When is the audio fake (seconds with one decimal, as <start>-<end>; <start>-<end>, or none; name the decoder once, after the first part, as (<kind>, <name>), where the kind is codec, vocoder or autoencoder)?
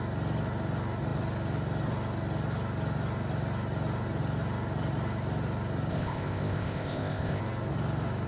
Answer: 5.9-7.4 (codec, ZipCodec)